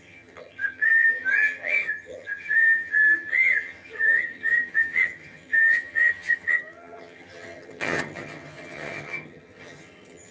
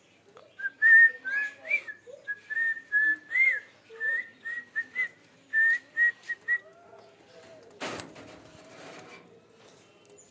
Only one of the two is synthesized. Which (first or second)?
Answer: first